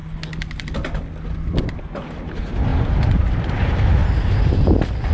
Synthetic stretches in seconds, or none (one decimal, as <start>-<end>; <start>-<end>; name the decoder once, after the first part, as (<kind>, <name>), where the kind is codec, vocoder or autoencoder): 1.8-4.0 (vocoder, BigVGAN v2)